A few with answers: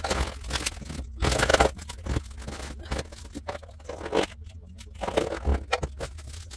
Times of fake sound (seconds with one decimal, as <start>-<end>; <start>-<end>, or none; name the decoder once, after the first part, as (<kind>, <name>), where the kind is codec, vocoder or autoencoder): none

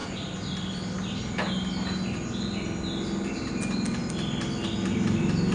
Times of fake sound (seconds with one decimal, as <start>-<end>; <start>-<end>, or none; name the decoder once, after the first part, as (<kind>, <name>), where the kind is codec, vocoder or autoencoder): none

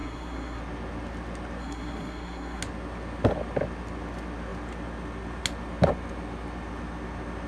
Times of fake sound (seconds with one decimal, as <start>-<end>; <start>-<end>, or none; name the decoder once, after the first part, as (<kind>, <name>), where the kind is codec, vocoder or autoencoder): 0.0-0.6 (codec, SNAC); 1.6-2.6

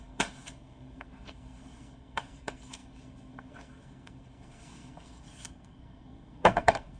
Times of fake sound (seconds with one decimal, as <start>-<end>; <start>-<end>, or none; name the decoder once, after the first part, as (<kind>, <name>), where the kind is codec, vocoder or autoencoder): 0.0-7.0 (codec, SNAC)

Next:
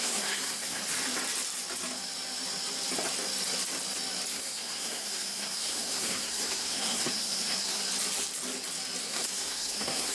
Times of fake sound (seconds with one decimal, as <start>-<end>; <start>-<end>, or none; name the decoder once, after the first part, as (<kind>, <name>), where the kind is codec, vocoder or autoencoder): 0.0-0.9 (codec, SNAC); 4.3-7.8; 9.0-10.1